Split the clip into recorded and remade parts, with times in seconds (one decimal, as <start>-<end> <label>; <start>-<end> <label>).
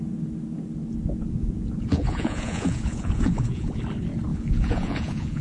0.0-1.4 recorded; 1.4-3.8 remade; 3.8-4.3 recorded; 4.3-5.4 remade